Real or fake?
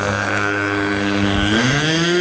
fake